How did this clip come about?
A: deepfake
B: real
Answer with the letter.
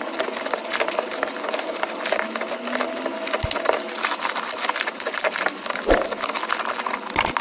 B